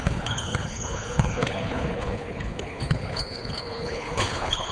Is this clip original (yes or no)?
no